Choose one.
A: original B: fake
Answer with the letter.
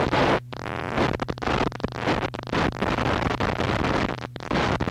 A